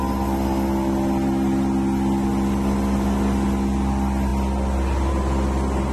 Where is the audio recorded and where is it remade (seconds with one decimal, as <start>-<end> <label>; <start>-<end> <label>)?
0.0-5.9 recorded